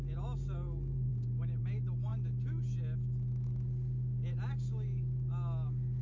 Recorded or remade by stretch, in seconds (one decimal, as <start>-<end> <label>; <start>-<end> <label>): 0.0-6.0 recorded